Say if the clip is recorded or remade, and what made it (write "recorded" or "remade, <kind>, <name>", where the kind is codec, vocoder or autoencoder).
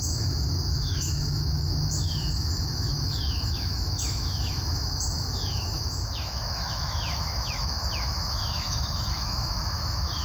remade, autoencoder, DAC-VAE